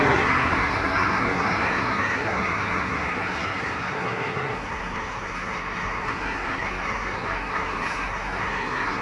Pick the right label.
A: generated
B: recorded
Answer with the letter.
A